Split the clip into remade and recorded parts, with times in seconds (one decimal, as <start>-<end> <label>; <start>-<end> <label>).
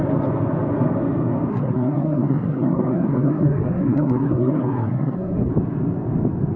0.0-1.5 recorded; 1.5-5.5 remade; 5.5-6.6 recorded